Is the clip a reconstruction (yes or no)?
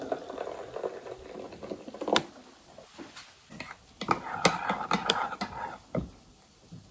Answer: no